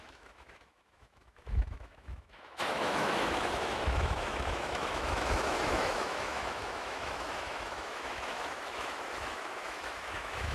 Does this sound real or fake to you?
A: fake